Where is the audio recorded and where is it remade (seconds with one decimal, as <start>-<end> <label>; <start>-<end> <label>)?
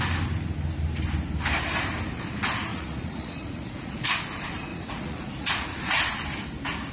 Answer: 0.0-2.7 recorded; 2.7-4.1 remade; 4.1-4.7 recorded; 4.7-6.0 remade; 6.0-6.9 recorded